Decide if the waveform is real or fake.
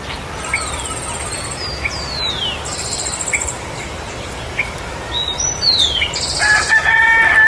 real